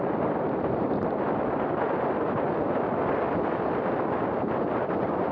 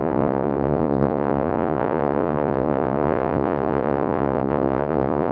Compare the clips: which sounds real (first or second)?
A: first